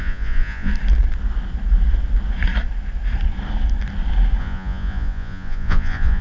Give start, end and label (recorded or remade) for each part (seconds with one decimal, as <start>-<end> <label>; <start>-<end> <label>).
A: 0.0-0.7 remade; 0.7-4.4 recorded; 4.4-6.2 remade